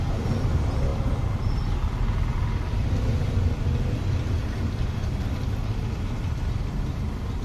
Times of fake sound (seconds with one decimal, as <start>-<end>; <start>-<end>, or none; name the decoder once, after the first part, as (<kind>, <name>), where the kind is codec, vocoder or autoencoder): none